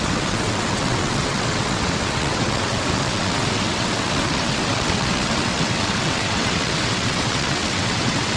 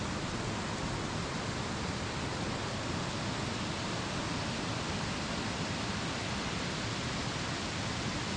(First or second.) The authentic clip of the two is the second